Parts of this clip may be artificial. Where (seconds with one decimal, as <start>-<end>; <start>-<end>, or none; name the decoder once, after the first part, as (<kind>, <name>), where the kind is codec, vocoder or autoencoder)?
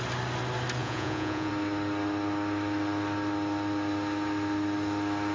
0.8-1.5 (vocoder, Vocos)